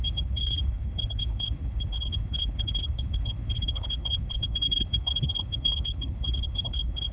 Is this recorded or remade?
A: remade